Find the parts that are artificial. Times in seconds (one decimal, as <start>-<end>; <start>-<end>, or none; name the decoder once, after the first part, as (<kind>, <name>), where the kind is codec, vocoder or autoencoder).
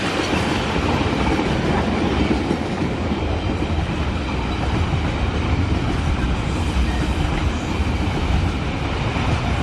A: 2.6-3.2 (codec, DAC)